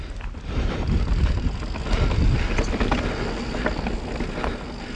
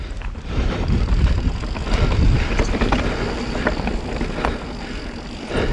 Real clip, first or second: first